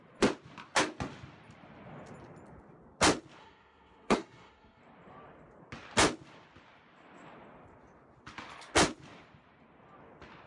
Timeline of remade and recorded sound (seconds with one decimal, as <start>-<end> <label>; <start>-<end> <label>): 0.0-3.4 recorded; 3.4-4.8 remade; 4.8-10.5 recorded